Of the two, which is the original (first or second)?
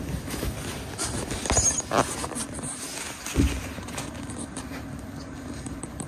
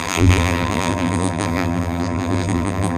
first